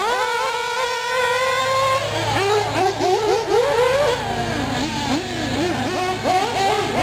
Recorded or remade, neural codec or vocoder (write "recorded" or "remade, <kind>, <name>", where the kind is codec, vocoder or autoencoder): recorded